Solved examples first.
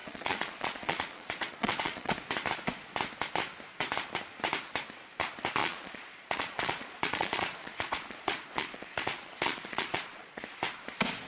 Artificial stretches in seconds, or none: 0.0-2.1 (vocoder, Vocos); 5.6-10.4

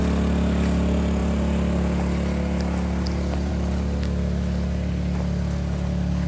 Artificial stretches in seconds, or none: 1.2-3.5 (vocoder, BigVGAN v2)

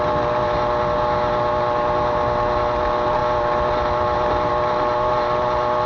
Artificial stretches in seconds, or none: none

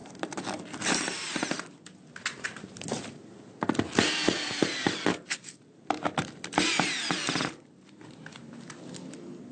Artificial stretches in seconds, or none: none

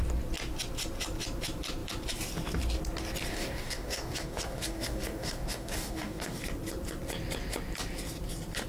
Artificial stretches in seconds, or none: 3.3-6.4 (codec, DAC)

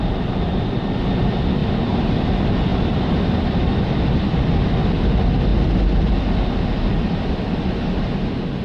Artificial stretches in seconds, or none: 1.6-2.2 (vocoder, BigVGAN v2); 2.7-4.7; 5.5-6.1; 6.9-7.5

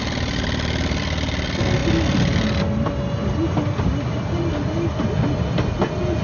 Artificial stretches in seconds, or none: none

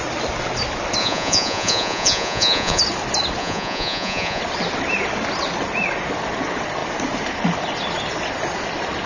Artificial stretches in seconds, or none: 1.0-2.8 (vocoder, Vocos); 3.4-4.4